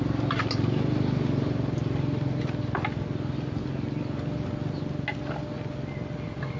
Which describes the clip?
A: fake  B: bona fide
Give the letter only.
B